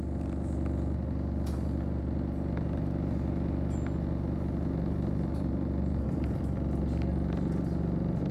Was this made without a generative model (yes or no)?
yes